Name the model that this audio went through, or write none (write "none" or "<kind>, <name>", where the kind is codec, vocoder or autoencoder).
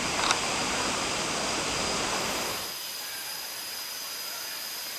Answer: none